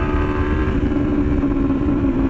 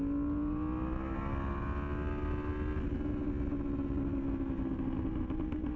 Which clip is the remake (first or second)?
first